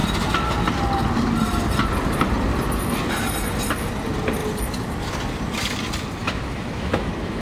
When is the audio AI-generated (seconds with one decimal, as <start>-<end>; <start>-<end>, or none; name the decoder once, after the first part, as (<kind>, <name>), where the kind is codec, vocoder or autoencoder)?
6.2-7.4 (autoencoder, DAC-VAE)